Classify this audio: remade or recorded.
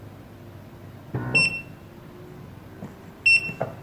recorded